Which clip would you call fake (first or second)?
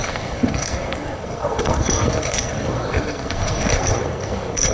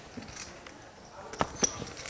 first